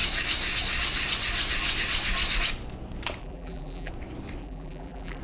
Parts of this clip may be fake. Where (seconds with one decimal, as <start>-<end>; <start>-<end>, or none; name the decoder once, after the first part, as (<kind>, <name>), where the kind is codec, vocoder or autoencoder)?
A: 3.2-3.9 (vocoder, BigVGAN v2); 4.4-5.2